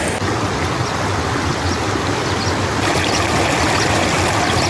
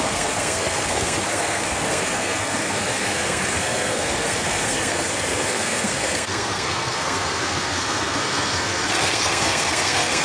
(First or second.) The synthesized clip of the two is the second